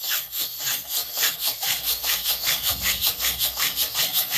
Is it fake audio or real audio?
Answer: fake